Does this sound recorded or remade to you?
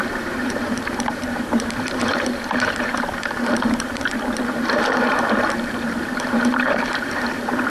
remade